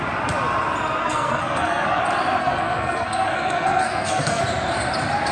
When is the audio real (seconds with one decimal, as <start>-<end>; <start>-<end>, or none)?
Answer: 0.0-1.0; 2.0-2.4; 4.4-5.3